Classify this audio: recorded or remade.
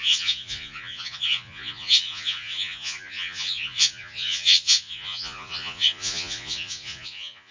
remade